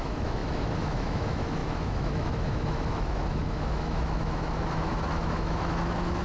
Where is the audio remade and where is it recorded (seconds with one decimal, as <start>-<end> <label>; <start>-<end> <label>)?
0.0-6.2 remade